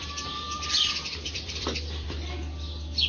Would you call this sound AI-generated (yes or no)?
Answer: yes